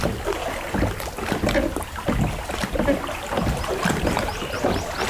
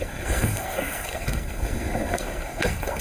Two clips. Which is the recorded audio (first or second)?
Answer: first